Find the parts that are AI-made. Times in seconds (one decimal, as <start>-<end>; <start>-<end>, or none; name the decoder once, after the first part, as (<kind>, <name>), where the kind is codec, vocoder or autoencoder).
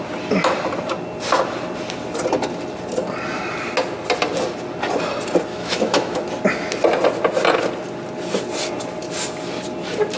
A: 5.5-6.2 (autoencoder, DAC-VAE)